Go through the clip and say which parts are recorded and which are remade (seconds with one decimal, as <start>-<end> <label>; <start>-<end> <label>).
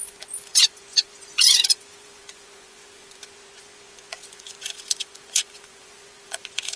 0.0-6.8 remade